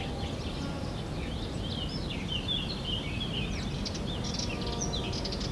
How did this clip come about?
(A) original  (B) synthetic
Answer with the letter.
A